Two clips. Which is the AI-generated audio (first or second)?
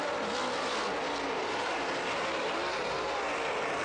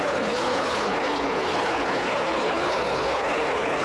second